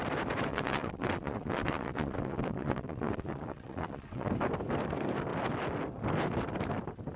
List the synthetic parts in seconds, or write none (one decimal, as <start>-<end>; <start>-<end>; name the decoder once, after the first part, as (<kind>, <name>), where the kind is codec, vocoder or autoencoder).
0.5-4.3 (vocoder, WaveNeXt)